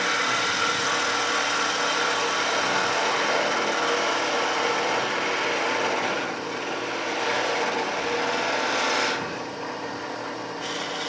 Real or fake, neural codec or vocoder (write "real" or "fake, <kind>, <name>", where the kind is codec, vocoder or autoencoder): real